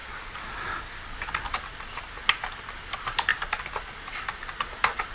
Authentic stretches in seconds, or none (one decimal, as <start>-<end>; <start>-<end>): 0.0-5.1